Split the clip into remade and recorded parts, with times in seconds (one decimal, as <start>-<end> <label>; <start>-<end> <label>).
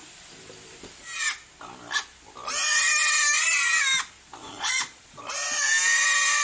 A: 0.0-4.4 recorded; 4.4-5.2 remade; 5.2-6.4 recorded